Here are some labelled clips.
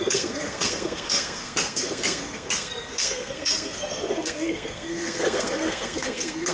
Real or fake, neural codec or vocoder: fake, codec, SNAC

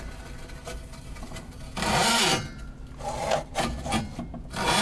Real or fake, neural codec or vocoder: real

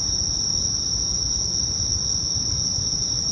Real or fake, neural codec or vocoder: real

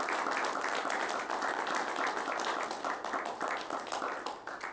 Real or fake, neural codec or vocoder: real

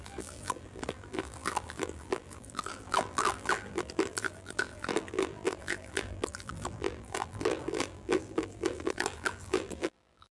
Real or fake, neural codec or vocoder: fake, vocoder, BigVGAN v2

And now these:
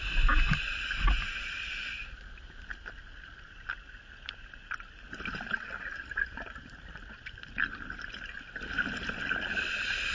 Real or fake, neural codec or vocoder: real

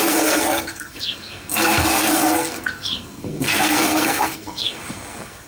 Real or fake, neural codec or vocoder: fake, codec, SNAC